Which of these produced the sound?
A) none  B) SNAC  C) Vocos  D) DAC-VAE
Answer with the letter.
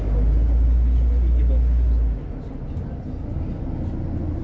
A